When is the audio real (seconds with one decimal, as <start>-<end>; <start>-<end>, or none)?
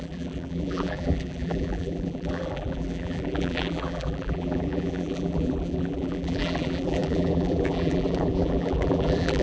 none